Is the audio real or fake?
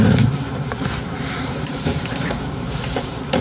fake